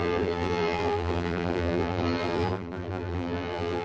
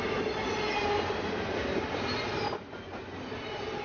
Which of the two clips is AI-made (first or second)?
first